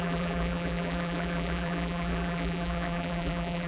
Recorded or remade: remade